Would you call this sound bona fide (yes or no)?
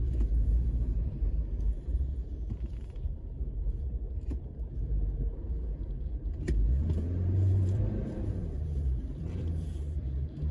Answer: no